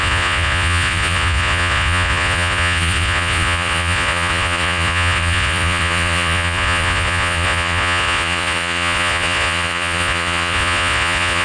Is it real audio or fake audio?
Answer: fake